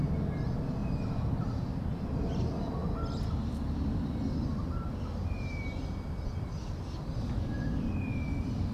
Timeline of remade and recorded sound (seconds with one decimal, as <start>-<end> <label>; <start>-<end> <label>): 0.0-8.7 recorded